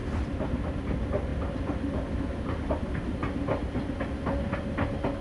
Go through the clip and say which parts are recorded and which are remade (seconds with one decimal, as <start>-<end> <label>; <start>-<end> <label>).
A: 0.0-5.2 recorded